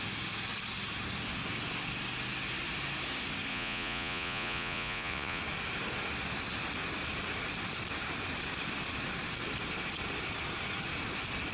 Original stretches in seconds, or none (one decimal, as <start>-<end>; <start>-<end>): 0.0-3.5; 5.4-11.5